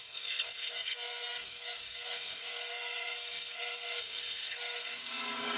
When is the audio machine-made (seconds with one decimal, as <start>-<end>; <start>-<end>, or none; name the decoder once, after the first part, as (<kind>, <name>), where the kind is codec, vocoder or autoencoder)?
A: 0.0-5.6 (codec, SNAC)